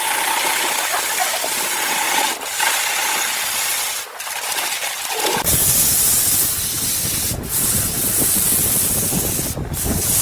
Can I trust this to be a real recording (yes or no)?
yes